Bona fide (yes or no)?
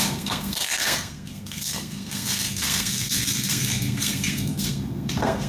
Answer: no